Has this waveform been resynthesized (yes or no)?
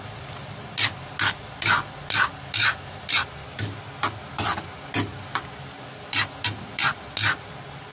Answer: no